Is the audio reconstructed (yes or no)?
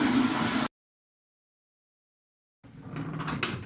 no